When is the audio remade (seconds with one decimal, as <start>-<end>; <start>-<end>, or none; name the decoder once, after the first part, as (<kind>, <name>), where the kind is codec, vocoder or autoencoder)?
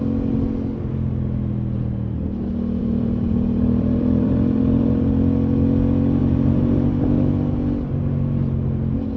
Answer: 2.8-5.1 (vocoder, BigVGAN v2); 6.2-7.3